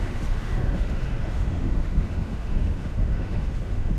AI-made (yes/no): yes